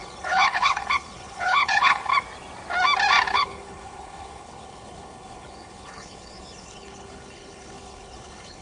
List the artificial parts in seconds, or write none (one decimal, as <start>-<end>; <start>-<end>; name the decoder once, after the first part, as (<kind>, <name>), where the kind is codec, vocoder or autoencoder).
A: 0.0-2.1 (codec, HILCodec); 3.3-8.6